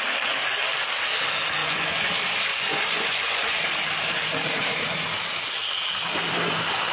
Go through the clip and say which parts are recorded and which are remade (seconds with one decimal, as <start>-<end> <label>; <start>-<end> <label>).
0.0-1.6 recorded; 1.6-2.1 remade; 2.1-2.5 recorded; 2.5-3.6 remade; 3.6-6.9 recorded